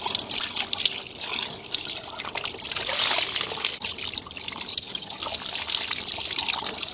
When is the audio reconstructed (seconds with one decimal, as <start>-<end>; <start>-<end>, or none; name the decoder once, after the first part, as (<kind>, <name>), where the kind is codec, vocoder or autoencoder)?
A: 4.7-5.2 (vocoder, HiFi-GAN)